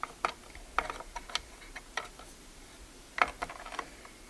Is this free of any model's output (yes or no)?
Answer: yes